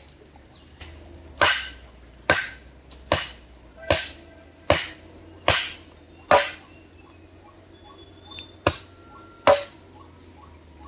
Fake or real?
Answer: real